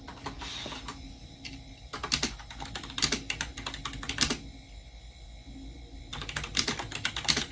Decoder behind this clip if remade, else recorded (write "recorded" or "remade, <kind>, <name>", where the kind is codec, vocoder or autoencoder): recorded